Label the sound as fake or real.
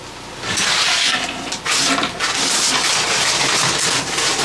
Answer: real